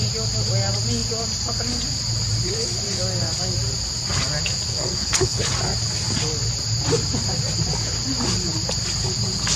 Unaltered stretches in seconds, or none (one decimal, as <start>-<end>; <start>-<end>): 0.0-4.7; 5.4-9.6